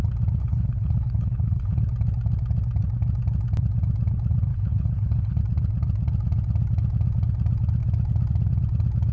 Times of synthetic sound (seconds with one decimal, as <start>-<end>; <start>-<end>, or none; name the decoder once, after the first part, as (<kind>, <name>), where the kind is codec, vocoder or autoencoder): 0.4-1.8 (codec, HILCodec); 4.5-5.4